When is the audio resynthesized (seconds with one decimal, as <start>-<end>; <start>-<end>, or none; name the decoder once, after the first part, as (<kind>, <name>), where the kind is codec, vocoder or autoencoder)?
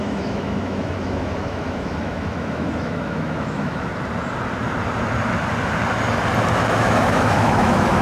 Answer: 0.0-3.9 (autoencoder, DAC-VAE); 6.8-8.0